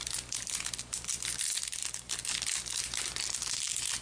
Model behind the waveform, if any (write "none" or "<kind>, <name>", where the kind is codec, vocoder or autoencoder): none